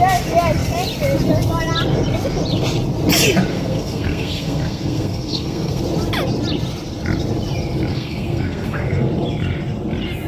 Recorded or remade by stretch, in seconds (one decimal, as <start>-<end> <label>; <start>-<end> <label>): 0.0-3.5 recorded; 3.5-5.8 remade; 5.8-7.9 recorded; 7.9-9.1 remade; 9.1-10.3 recorded